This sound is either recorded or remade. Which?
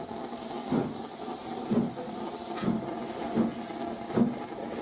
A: recorded